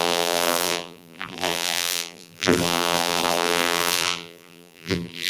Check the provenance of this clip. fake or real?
fake